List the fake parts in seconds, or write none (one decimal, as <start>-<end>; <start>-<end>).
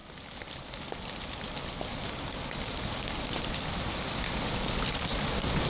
none